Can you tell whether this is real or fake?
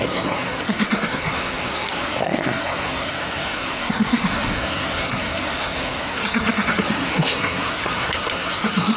fake